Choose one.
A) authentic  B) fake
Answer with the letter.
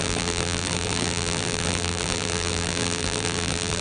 B